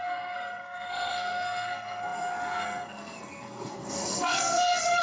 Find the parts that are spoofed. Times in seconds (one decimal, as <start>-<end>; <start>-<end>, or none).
0.0-5.0